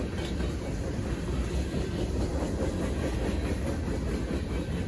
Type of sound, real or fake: real